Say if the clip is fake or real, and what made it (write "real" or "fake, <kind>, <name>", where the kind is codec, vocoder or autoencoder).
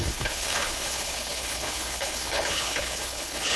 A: fake, codec, HILCodec